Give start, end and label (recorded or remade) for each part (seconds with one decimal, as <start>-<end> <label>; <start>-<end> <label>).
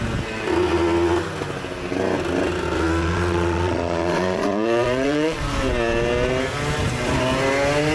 0.0-3.0 recorded; 3.0-5.4 remade; 5.4-7.9 recorded